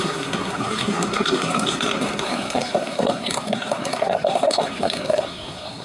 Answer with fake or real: fake